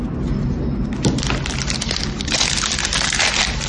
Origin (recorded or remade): recorded